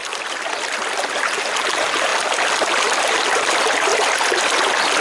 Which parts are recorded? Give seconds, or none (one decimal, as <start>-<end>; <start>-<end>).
0.0-1.4; 2.1-2.7; 3.9-5.0